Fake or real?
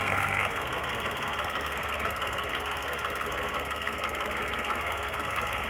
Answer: fake